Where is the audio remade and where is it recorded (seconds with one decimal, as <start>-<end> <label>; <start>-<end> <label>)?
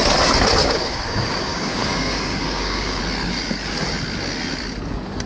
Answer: 0.0-0.6 recorded; 0.6-3.0 remade; 3.0-5.3 recorded